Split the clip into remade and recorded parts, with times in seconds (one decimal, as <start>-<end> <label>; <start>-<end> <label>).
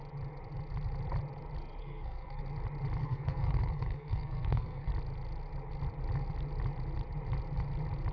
0.0-1.8 recorded; 1.8-2.4 remade; 2.4-3.0 recorded; 3.0-4.9 remade; 4.9-8.1 recorded